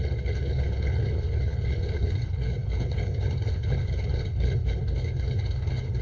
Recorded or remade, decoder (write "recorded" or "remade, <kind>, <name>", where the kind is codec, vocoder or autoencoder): remade, codec, HILCodec